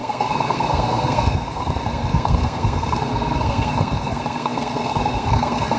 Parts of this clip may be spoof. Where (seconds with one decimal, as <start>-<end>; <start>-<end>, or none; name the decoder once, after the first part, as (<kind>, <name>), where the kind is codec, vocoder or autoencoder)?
0.0-5.8 (codec, SNAC)